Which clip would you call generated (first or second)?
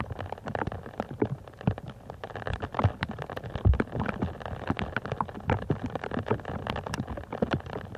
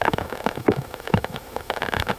second